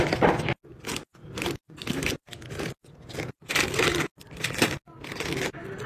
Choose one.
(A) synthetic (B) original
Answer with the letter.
B